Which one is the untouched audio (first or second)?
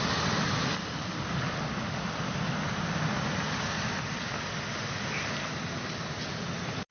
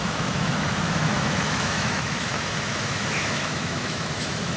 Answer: first